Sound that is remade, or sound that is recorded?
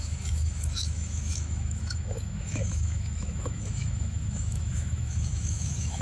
remade